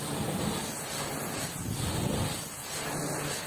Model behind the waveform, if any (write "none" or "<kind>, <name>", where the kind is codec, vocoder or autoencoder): none